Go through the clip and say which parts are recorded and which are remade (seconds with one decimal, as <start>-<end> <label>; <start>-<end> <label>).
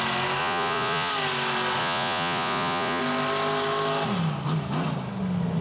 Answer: 0.0-0.4 recorded; 0.4-1.1 remade; 1.1-1.8 recorded; 1.8-3.0 remade; 3.0-5.6 recorded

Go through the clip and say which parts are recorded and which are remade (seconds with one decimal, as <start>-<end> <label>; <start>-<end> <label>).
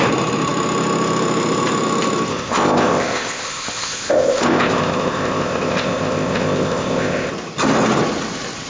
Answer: 0.0-2.3 recorded; 2.3-7.3 remade; 7.3-8.7 recorded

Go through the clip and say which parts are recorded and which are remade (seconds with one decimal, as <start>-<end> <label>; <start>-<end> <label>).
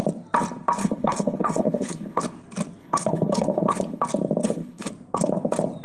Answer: 0.0-0.8 recorded; 0.8-2.2 remade; 2.2-2.8 recorded; 2.8-4.0 remade; 4.0-4.4 recorded; 4.4-4.9 remade; 4.9-5.8 recorded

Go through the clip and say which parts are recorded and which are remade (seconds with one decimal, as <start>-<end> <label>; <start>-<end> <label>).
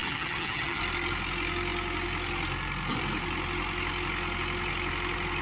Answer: 0.0-0.8 remade; 0.8-5.4 recorded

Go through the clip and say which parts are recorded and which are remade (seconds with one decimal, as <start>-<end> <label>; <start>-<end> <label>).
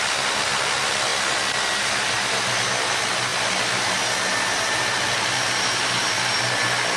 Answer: 0.0-7.0 recorded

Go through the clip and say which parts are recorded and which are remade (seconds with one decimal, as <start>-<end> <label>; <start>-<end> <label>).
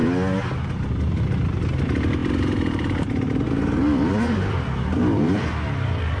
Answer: 0.0-0.9 recorded; 0.9-6.2 remade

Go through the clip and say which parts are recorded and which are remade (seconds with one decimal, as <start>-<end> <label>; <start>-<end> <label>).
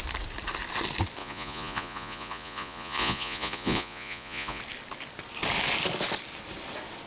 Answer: 0.0-1.2 recorded; 1.2-4.6 remade; 4.6-7.1 recorded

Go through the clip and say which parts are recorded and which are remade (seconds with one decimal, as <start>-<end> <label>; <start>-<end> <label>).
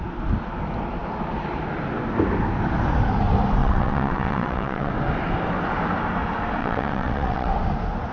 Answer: 0.0-3.6 recorded; 3.6-4.9 remade; 4.9-6.6 recorded; 6.6-7.5 remade; 7.5-8.1 recorded